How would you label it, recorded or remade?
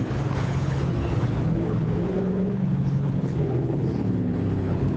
remade